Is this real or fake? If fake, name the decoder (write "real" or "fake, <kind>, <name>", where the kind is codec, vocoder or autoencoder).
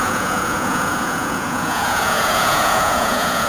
fake, vocoder, Vocos